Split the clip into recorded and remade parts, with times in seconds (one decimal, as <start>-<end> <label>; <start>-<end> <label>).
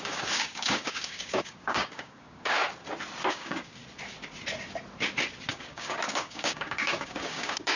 0.0-2.6 remade; 2.6-3.3 recorded; 3.3-3.8 remade; 3.8-5.5 recorded; 5.5-7.8 remade